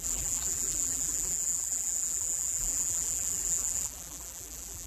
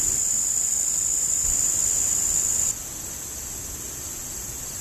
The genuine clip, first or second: second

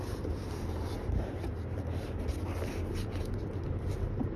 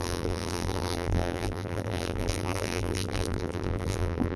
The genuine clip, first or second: first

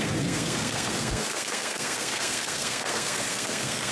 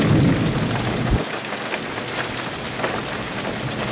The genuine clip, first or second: second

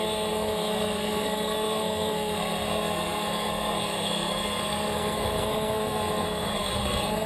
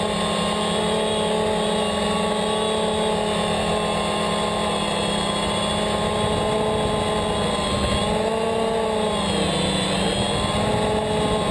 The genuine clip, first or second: second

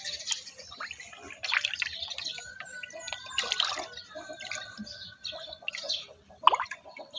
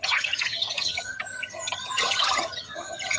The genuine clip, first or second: first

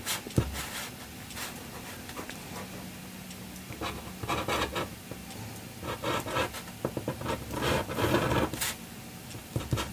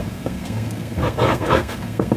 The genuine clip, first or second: first